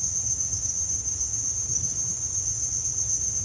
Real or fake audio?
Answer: fake